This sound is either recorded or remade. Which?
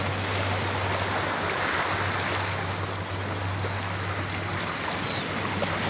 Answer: recorded